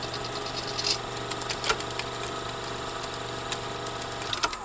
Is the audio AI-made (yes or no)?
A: no